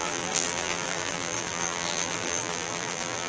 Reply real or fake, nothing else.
fake